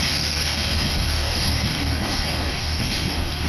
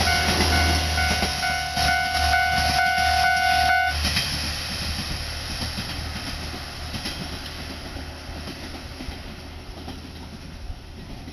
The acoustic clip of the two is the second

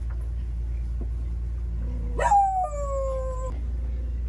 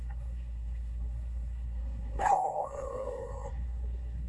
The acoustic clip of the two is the first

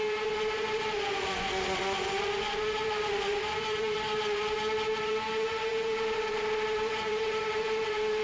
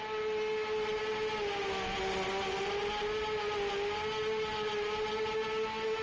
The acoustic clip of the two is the second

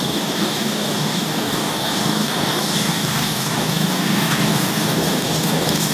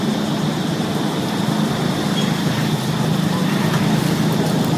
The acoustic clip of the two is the second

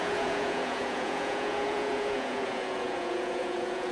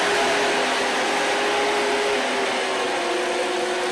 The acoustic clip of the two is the second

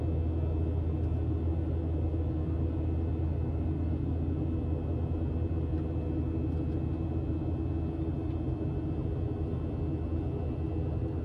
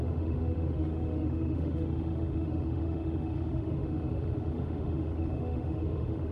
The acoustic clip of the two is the first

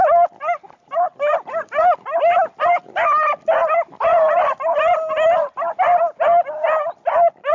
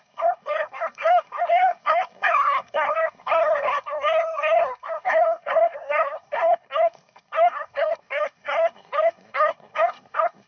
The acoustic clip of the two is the first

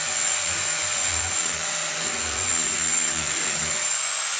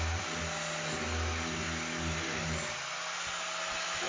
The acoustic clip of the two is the second